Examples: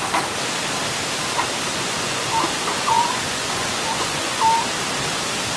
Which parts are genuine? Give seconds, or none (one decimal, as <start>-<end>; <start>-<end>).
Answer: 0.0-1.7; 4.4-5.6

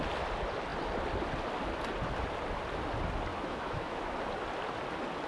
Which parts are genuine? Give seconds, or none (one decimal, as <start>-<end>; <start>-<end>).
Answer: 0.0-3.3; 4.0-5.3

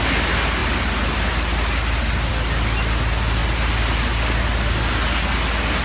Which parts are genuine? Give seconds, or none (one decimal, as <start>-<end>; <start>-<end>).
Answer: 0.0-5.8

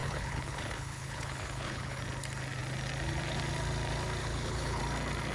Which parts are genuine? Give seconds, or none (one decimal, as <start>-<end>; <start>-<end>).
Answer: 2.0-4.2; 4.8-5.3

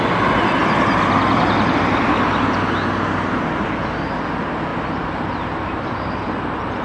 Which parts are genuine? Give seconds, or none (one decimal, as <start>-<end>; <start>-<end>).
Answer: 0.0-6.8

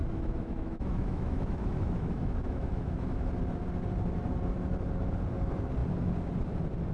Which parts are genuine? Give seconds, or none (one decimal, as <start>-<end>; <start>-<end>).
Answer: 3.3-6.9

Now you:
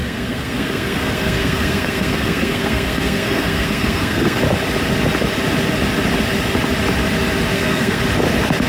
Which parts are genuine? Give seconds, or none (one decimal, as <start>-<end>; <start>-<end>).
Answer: 4.4-7.5; 8.0-8.7

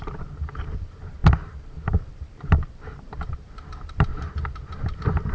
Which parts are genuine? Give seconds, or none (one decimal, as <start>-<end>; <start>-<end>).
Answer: 4.1-5.3